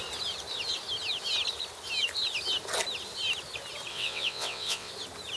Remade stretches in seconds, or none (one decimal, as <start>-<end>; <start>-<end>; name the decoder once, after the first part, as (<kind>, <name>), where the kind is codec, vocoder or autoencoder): 3.9-4.9 (vocoder, WaveNeXt)